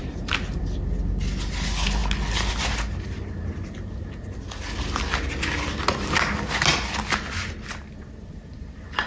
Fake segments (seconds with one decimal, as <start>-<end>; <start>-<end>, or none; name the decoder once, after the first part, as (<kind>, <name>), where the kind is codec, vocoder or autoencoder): none